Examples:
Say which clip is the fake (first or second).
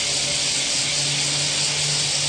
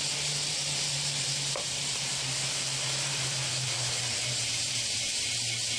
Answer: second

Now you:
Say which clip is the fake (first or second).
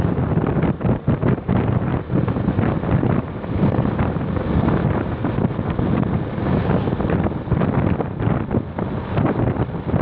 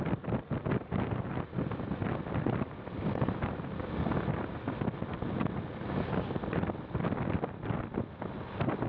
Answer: first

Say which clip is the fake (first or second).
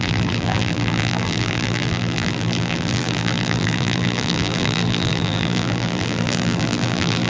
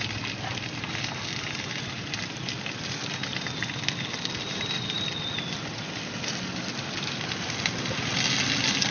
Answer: first